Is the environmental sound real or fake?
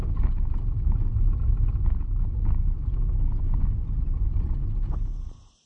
real